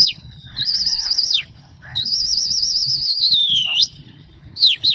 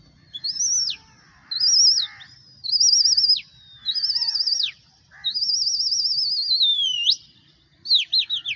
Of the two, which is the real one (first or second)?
second